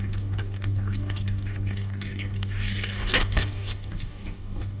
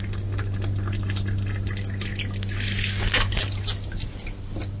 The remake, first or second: first